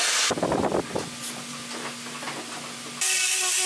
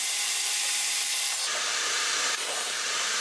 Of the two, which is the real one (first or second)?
first